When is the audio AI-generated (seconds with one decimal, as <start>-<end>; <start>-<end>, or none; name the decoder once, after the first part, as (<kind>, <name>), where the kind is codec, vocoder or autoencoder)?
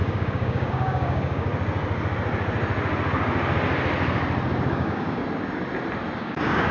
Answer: 0.0-1.5 (codec, DAC); 4.7-5.2; 6.2-6.7